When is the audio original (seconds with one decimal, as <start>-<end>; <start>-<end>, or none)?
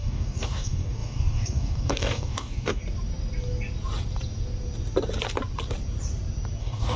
2.8-6.6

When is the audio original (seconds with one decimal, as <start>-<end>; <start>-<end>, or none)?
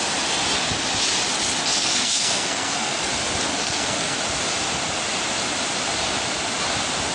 0.0-1.8; 3.1-3.6; 4.2-7.1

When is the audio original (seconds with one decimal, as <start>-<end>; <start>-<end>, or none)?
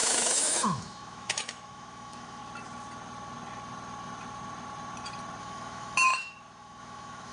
2.4-5.4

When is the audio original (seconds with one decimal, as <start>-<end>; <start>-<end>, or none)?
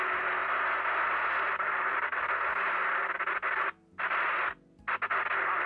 0.0-5.7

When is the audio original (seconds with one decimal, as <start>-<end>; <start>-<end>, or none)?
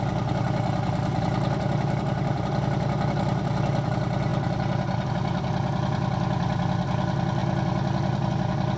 0.0-8.8